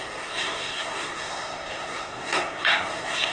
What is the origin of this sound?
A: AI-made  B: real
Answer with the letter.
A